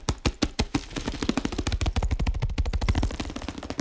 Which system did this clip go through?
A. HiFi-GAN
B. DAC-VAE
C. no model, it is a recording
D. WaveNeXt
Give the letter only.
C